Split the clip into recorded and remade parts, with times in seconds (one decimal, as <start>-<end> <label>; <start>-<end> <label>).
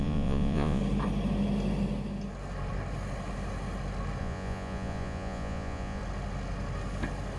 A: 0.0-0.8 remade; 0.8-4.2 recorded; 4.2-6.0 remade; 6.0-7.4 recorded